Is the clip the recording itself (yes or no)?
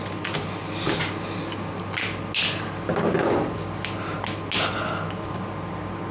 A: yes